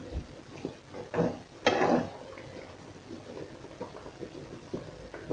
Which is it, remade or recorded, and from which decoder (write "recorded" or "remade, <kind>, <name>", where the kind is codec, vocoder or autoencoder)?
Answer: recorded